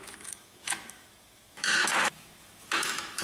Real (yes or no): no